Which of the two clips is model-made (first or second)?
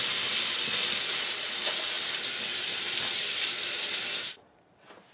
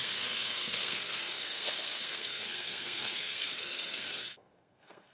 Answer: second